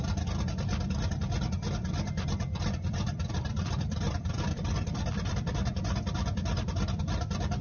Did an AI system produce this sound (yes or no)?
yes